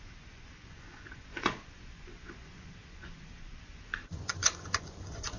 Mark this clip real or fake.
fake